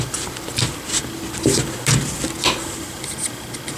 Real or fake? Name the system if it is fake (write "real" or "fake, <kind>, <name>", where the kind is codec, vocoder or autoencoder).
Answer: real